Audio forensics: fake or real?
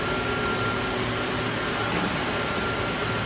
real